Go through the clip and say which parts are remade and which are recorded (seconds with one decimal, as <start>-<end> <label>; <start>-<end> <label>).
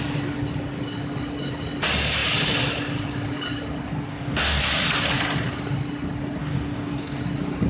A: 0.0-4.1 recorded; 4.1-4.6 remade; 4.6-6.4 recorded; 6.4-7.2 remade; 7.2-7.7 recorded